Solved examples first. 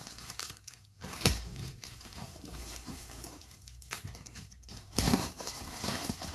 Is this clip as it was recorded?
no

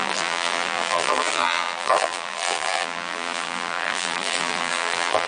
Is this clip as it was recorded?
no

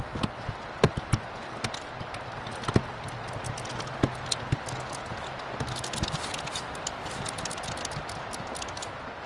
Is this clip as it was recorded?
yes